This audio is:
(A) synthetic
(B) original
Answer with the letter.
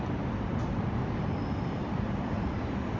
A